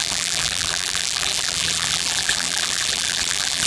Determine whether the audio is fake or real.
fake